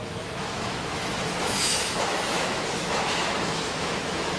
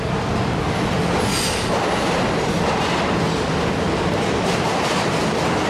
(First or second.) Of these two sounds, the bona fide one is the second